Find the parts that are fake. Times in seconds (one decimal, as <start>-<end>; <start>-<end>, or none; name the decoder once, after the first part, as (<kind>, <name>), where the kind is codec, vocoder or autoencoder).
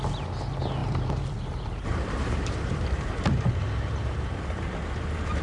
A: 0.8-3.4 (vocoder, BigVGAN v2)